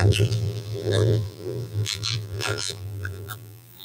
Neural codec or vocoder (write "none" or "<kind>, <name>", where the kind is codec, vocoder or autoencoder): vocoder, BigVGAN v2